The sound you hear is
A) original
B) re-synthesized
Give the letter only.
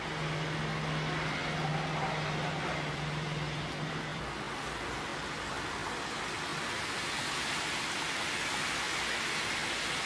A